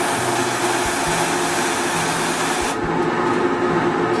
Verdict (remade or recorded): recorded